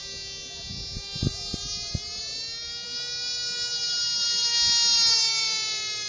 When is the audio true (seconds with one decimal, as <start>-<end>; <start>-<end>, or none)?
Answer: 0.0-6.1